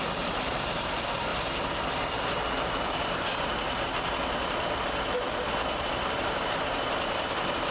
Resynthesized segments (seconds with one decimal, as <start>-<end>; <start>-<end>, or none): 0.0-1.3; 5.9-7.7